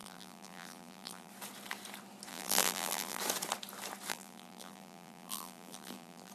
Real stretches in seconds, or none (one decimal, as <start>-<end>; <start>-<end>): 1.3-2.3; 3.2-4.1